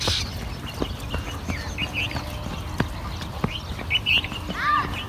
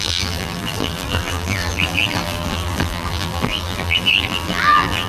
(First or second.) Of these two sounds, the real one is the first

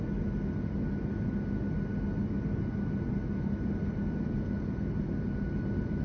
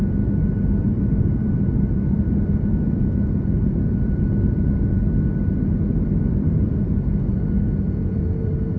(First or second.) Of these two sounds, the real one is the first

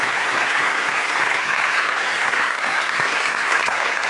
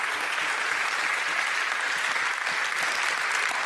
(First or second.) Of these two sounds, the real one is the second